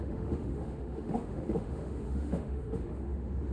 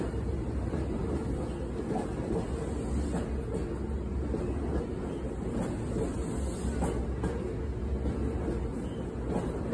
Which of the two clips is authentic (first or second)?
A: second